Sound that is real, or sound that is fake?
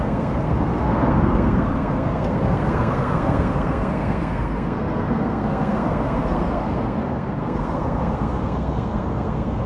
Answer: fake